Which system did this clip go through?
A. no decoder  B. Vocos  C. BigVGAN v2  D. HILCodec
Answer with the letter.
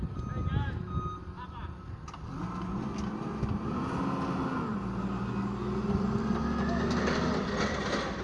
A